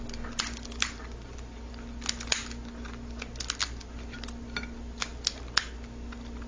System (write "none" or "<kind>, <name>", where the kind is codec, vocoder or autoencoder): none